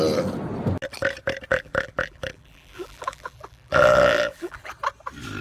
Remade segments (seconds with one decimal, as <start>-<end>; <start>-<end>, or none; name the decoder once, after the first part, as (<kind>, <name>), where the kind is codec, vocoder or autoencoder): 1.5-4.7 (vocoder, BigVGAN v2)